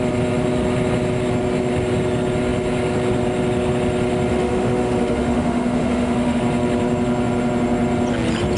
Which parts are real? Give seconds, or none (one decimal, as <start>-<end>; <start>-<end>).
0.0-4.3; 6.4-8.6